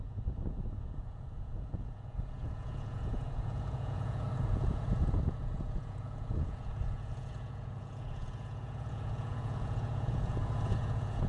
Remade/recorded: remade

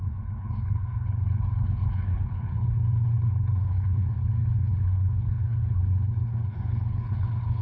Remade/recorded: remade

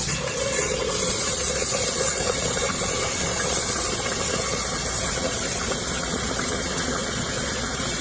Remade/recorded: remade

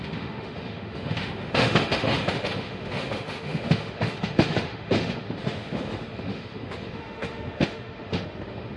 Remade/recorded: remade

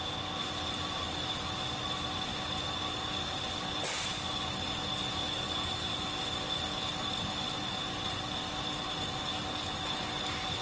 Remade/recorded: recorded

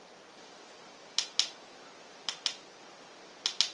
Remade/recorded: recorded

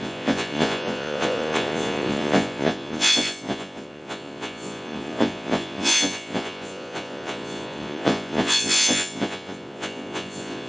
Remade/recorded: remade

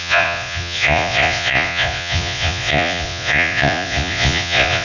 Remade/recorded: remade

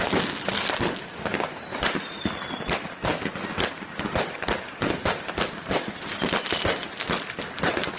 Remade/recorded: recorded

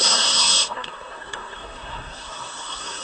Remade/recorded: remade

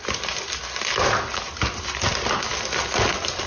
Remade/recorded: recorded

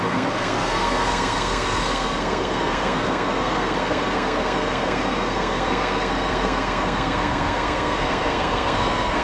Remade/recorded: remade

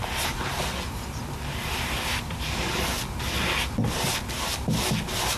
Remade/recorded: recorded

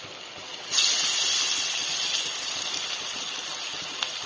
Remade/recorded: recorded